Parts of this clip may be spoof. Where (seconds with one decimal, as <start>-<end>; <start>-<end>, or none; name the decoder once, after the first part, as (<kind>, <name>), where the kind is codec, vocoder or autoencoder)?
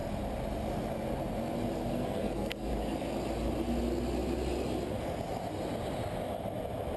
1.9-2.7 (codec, SNAC)